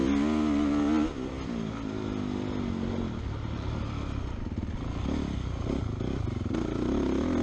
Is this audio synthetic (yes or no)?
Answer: no